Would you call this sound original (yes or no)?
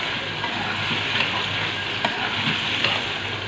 yes